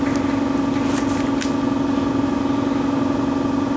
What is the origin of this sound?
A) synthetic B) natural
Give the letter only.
B